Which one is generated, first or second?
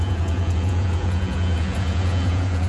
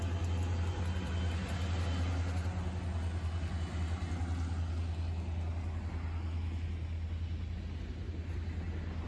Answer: first